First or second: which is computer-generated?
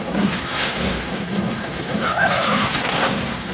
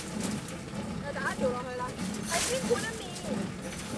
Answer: first